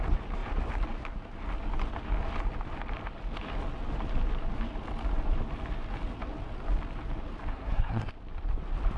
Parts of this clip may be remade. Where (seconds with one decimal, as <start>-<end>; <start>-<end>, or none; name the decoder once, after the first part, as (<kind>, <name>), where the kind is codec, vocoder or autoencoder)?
7.5-8.1 (codec, SNAC)